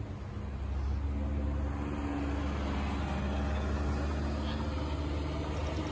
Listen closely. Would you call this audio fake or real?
real